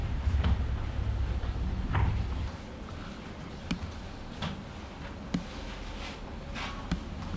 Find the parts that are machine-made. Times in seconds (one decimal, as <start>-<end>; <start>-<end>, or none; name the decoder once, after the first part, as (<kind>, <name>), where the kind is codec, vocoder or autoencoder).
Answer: none